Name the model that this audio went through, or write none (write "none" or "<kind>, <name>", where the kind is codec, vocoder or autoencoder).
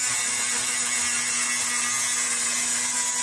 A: none